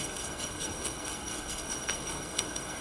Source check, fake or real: fake